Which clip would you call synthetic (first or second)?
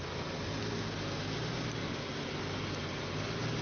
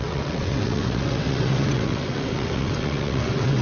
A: second